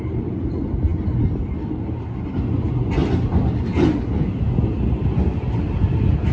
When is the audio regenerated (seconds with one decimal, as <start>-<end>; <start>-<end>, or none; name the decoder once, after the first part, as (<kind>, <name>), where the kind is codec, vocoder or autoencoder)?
none